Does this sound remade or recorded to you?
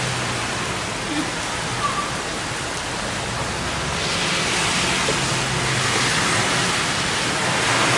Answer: recorded